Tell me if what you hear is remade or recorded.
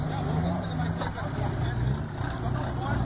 recorded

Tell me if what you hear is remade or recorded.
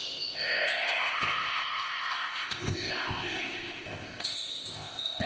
remade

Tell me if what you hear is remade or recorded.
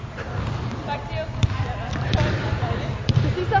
recorded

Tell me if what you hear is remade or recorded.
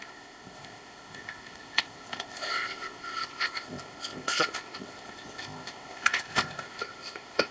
remade